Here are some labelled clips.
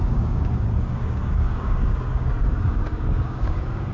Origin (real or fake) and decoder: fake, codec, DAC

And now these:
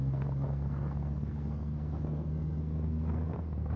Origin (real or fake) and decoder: fake, codec, SNAC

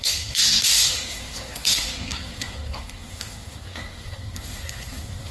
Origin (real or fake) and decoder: fake, codec, SNAC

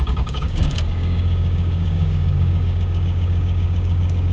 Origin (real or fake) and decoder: fake, codec, DAC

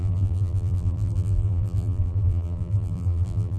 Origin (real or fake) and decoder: fake, vocoder, BigVGAN v2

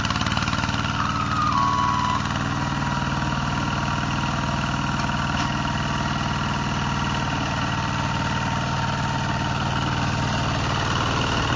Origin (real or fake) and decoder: real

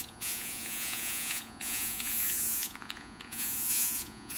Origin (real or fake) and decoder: fake, vocoder, Vocos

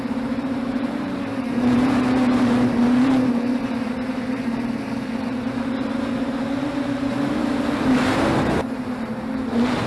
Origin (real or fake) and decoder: fake, vocoder, BigVGAN v2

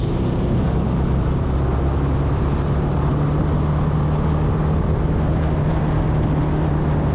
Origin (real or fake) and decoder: real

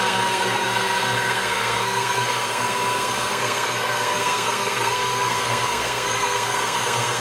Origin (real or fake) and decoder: fake, codec, SNAC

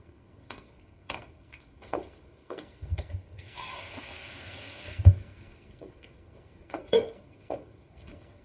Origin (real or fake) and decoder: fake, codec, SNAC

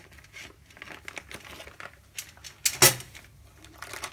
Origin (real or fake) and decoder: real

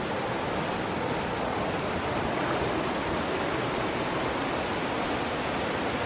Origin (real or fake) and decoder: real